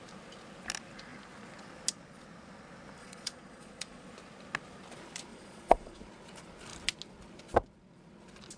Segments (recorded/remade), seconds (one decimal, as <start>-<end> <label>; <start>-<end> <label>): 0.0-3.0 recorded; 3.0-4.1 remade; 4.1-5.3 recorded; 5.3-6.0 remade; 6.0-8.6 recorded